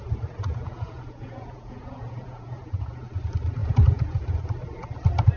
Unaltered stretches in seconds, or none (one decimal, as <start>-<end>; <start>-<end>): 3.2-3.6; 4.4-5.4